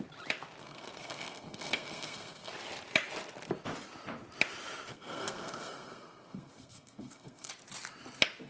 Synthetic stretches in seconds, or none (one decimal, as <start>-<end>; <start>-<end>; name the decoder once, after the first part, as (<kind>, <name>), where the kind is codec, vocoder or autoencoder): 0.6-2.5 (codec, SNAC); 4.9-7.5